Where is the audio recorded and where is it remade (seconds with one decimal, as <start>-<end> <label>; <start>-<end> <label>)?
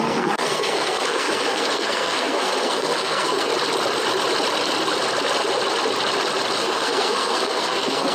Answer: 0.0-3.5 remade; 3.5-6.6 recorded; 6.6-8.1 remade